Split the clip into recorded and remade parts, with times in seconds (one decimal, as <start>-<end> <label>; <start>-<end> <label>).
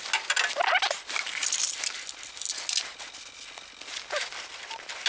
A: 0.0-5.1 recorded